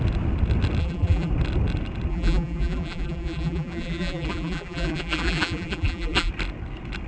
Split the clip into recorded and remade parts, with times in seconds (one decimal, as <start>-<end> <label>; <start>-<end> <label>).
0.0-0.8 recorded; 0.8-1.3 remade; 1.3-2.1 recorded; 2.1-6.3 remade; 6.3-7.1 recorded